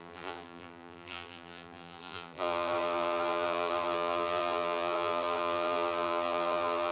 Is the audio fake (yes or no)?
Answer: yes